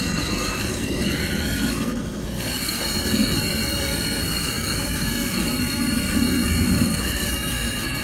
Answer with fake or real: fake